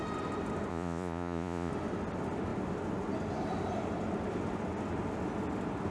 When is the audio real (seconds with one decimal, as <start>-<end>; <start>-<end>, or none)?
0.0-0.7; 1.7-5.9